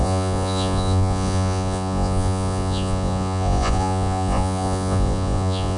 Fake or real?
fake